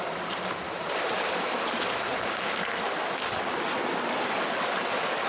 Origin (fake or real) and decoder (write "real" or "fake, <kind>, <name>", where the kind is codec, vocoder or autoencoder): real